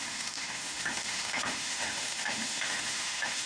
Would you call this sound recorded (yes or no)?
no